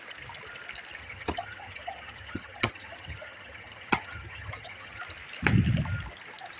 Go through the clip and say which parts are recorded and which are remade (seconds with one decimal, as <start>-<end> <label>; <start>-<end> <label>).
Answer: 0.0-1.0 recorded; 1.0-5.0 remade; 5.0-6.6 recorded